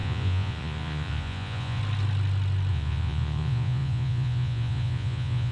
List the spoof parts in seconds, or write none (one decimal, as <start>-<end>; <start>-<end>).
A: 0.0-1.8; 2.7-5.5